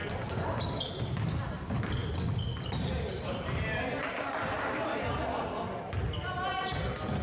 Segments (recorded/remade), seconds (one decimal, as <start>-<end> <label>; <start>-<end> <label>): 0.0-7.2 recorded